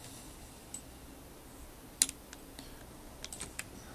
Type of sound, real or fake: real